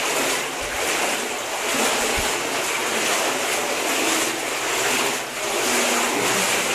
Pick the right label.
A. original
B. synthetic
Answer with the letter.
A